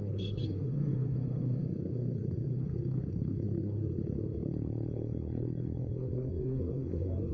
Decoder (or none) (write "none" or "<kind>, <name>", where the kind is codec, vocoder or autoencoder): codec, SNAC